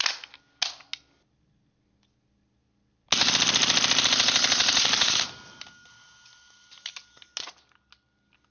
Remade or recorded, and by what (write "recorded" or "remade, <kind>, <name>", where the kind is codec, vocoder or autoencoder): recorded